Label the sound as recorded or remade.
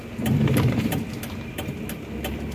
recorded